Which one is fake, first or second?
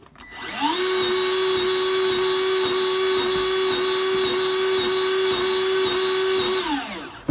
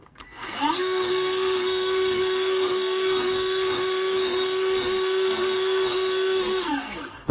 second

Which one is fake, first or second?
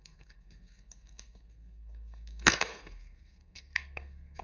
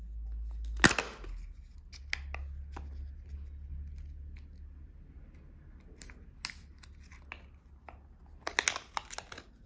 first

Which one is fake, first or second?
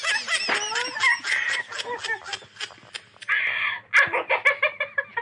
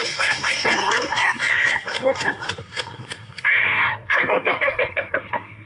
second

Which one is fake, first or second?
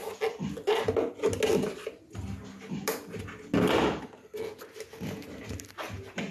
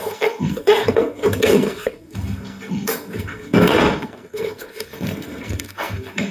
second